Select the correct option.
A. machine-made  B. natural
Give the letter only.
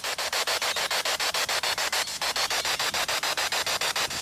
B